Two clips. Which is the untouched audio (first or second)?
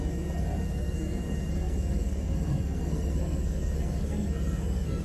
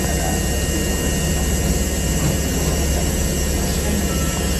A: second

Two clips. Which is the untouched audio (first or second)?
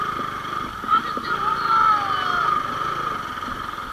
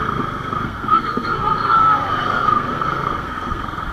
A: first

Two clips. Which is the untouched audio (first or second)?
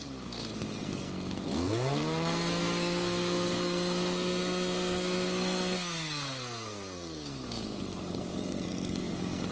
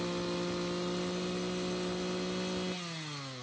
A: second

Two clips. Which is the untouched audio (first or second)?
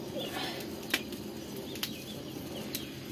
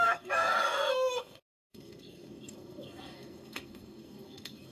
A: first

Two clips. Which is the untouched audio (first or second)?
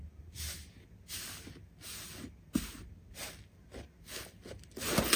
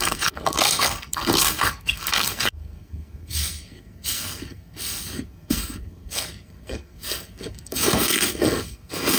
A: first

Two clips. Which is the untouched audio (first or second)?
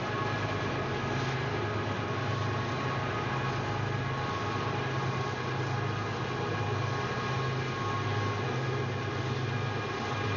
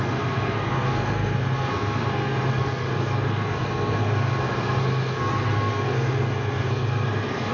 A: first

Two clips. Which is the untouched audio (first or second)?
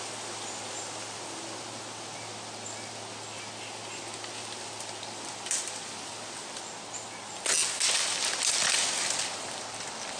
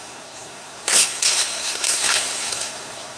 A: first